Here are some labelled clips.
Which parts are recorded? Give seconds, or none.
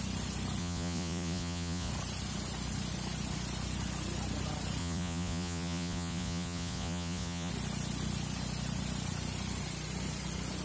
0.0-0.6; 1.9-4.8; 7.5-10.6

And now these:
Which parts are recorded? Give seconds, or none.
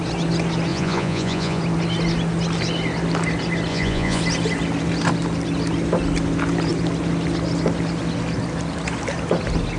0.0-0.7; 1.6-3.7; 4.2-9.8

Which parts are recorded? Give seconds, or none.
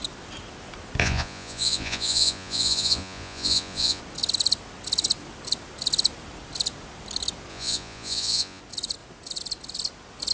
0.0-1.0; 4.0-7.5; 8.6-10.3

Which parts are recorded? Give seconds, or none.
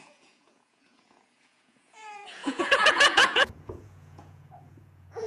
none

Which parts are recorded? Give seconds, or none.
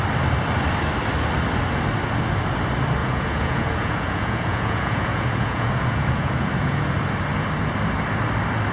0.0-3.0; 6.9-8.7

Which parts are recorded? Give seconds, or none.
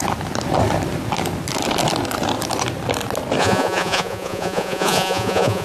0.0-3.4